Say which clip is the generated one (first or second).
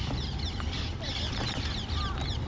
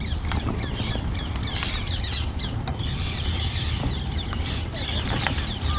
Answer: second